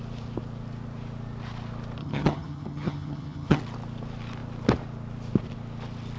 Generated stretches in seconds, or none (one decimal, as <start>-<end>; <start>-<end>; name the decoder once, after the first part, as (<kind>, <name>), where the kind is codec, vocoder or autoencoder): 2.0-3.6 (vocoder, HiFi-GAN)